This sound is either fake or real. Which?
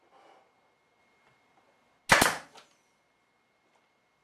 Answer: real